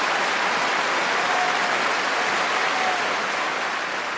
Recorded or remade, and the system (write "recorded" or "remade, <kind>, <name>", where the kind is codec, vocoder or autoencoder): recorded